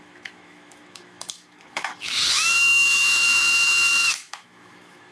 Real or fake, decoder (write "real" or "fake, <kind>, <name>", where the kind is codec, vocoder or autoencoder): fake, autoencoder, DAC-VAE